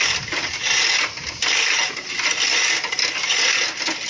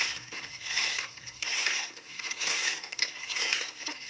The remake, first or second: second